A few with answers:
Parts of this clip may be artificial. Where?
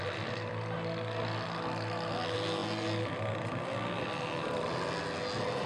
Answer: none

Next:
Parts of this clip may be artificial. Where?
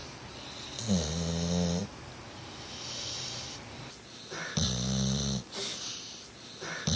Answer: 0.0-0.5 (vocoder, BigVGAN v2); 1.8-2.5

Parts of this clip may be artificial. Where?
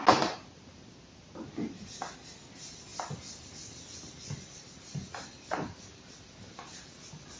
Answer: 2.9-4.5 (vocoder, BigVGAN v2)